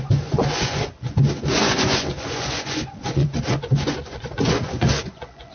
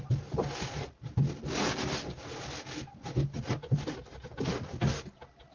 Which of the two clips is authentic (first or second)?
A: second